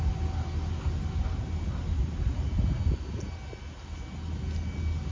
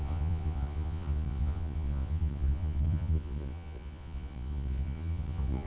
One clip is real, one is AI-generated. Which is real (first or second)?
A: first